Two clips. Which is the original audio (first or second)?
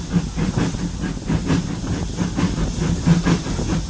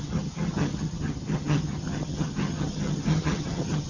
first